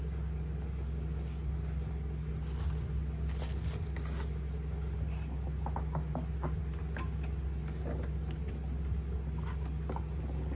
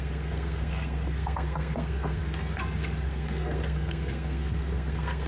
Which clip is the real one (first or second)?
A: first